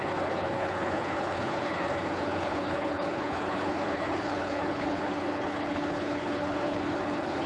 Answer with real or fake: fake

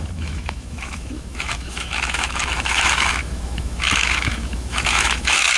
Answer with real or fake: fake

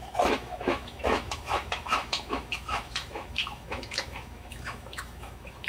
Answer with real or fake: fake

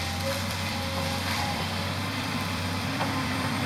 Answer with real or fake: fake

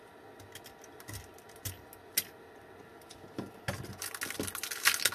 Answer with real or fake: real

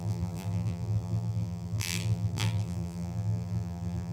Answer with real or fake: fake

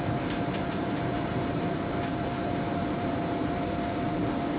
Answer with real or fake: fake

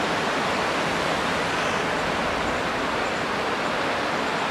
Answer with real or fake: real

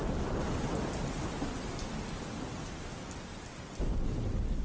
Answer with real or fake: real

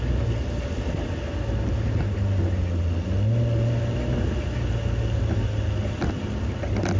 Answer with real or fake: real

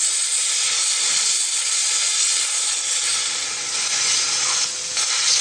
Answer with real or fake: real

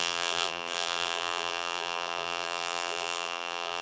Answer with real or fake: fake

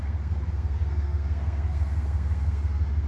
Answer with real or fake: fake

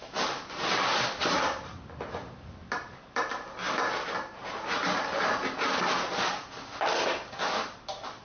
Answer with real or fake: real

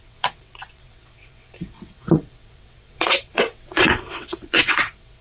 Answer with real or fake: fake